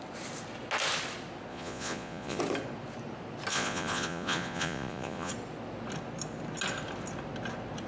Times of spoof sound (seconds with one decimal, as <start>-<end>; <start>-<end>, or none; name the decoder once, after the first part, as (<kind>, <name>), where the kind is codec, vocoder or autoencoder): 1.5-2.4 (vocoder, Vocos); 3.5-5.3